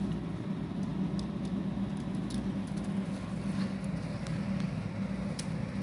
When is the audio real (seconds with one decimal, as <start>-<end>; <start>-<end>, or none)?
0.0-5.8

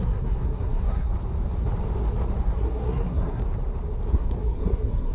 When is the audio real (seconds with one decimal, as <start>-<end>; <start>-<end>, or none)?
1.1-2.4; 3.4-4.1

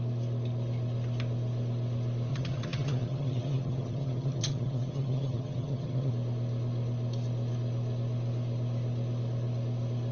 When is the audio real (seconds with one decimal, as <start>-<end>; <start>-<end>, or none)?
0.0-2.3; 6.1-10.1

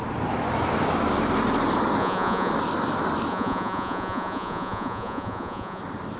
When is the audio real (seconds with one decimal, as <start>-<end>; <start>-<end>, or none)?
0.0-2.0; 2.5-3.3; 5.8-6.2